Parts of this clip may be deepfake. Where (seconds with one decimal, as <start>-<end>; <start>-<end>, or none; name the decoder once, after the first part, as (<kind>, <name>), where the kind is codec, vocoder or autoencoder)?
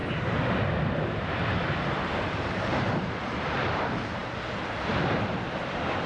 2.2-6.1 (vocoder, BigVGAN v2)